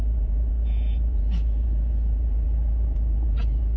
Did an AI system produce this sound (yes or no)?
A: yes